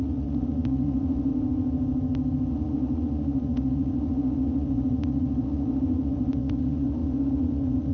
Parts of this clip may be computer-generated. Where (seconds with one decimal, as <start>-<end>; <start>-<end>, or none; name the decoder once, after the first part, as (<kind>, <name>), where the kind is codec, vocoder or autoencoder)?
0.0-1.3 (vocoder, Vocos); 2.5-7.9